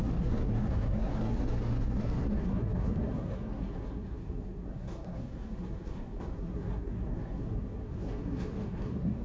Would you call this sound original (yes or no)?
no